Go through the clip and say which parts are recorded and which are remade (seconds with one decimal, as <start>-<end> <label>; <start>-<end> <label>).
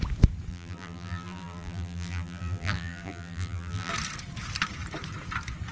0.0-0.5 recorded; 0.5-3.9 remade; 3.9-5.7 recorded